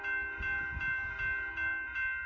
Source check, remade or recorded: recorded